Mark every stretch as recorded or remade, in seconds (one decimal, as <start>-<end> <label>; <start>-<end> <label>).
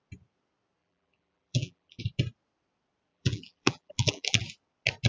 0.0-0.8 recorded; 0.8-2.0 remade; 2.0-3.1 recorded; 3.1-4.4 remade; 4.4-5.1 recorded